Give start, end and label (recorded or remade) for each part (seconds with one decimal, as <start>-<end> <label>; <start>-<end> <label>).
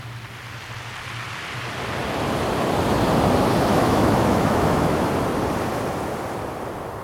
0.0-3.7 recorded; 3.7-5.1 remade; 5.1-7.0 recorded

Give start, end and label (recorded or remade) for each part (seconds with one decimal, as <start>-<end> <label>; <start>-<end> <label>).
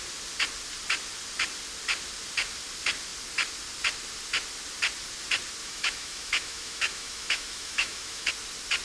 0.0-5.6 recorded; 5.6-8.3 remade; 8.3-8.8 recorded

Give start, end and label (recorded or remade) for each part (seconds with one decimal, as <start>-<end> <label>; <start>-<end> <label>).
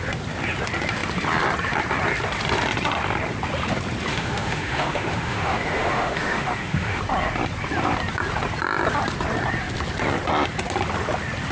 0.0-4.1 recorded; 4.1-7.0 remade; 7.0-11.5 recorded